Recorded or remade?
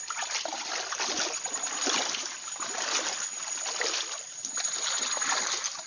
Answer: recorded